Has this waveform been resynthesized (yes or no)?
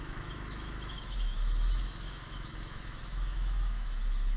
yes